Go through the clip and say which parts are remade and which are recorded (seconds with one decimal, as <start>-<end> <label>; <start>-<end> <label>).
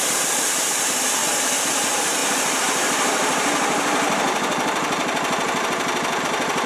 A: 0.0-1.2 remade; 1.2-1.7 recorded; 1.7-6.7 remade